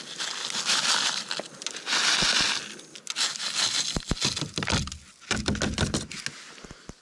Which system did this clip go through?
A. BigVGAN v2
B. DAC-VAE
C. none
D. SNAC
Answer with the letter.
C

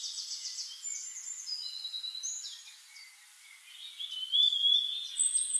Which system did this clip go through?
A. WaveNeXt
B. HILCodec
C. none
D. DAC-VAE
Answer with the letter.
C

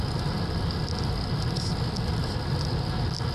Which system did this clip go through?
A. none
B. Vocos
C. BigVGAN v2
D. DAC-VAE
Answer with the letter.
A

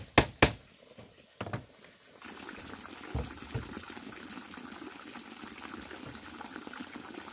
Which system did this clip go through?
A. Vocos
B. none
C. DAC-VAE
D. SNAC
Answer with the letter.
B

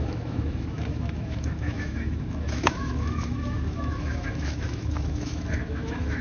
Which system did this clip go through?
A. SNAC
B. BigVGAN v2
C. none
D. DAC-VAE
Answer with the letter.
D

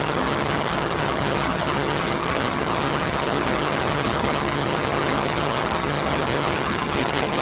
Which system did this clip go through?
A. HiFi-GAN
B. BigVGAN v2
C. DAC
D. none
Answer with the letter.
A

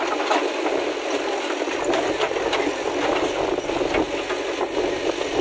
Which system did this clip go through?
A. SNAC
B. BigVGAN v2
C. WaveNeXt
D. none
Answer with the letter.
D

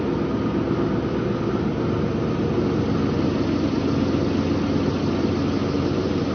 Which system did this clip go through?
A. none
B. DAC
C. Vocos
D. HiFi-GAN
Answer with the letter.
A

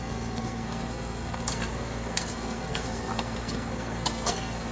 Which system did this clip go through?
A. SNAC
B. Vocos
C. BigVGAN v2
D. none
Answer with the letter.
A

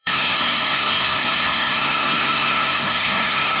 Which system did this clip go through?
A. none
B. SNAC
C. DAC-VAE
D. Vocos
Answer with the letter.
B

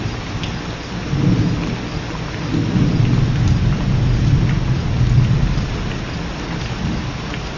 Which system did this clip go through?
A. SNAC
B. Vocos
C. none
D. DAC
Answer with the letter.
C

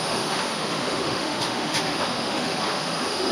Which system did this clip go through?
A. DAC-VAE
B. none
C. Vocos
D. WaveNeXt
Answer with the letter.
A